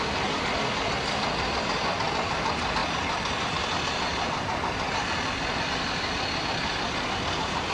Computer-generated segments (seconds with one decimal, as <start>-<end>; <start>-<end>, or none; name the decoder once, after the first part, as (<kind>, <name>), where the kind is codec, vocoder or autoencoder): none